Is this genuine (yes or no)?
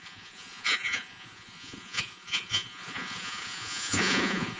no